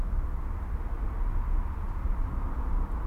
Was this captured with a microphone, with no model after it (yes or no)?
yes